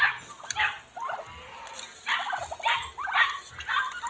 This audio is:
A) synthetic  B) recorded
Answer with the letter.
B